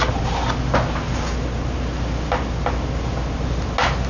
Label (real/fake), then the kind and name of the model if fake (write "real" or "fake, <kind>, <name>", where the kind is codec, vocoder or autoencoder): real